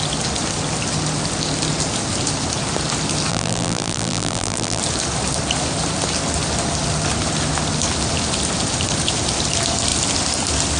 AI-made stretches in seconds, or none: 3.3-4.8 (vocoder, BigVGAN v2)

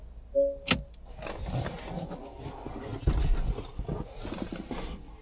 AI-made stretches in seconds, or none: none

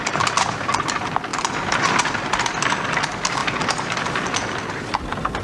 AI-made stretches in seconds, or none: none

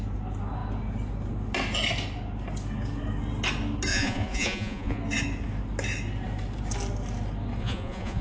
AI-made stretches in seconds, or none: 3.9-5.0 (vocoder, Vocos); 7.6-8.2